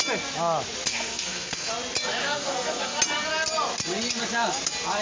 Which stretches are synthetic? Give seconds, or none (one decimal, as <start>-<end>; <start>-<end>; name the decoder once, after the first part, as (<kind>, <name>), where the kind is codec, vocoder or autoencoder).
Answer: 0.9-1.7 (codec, SNAC); 2.2-3.0